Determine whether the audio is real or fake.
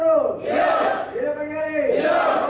real